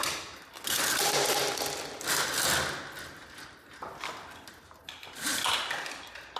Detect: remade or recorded recorded